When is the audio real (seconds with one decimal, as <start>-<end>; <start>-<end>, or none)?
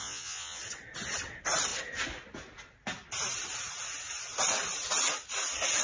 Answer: 0.6-5.8